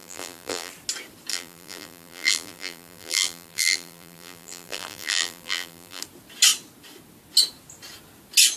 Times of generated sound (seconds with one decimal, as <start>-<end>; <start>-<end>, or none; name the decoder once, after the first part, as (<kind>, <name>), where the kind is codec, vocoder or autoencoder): 0.0-0.7 (vocoder, BigVGAN v2); 1.3-6.0